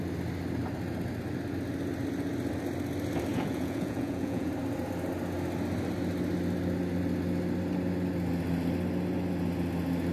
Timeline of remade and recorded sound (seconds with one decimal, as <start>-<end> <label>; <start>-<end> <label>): 0.0-3.3 recorded; 3.3-4.5 remade; 4.5-10.1 recorded

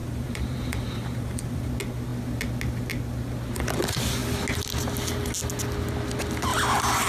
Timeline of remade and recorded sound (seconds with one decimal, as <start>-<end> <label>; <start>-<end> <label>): 0.0-1.7 remade; 1.7-6.5 recorded; 6.5-7.1 remade